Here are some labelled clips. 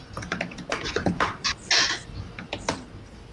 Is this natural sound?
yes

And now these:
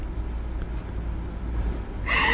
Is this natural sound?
yes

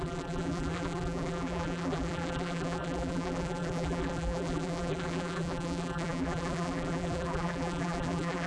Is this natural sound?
no